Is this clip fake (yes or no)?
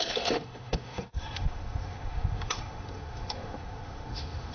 yes